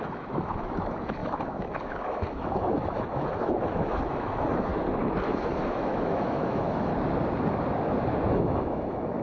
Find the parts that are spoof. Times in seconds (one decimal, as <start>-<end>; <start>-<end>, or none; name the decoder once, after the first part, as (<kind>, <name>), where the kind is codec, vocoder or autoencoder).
0.0-4.7 (autoencoder, DAC-VAE); 5.2-6.9; 8.3-9.2